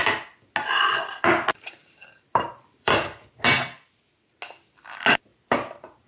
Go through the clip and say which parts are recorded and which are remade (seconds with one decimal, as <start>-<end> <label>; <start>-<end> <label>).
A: 0.0-1.5 recorded; 1.5-2.9 remade; 2.9-5.3 recorded; 5.3-6.1 remade